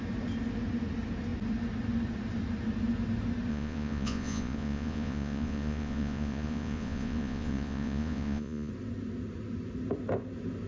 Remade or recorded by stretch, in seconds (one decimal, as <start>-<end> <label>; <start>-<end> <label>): 0.0-3.5 recorded; 3.5-8.7 remade; 8.7-10.7 recorded